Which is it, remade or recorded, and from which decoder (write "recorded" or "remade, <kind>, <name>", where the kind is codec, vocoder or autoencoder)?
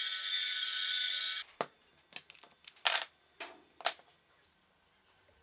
recorded